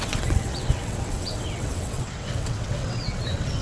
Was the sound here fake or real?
fake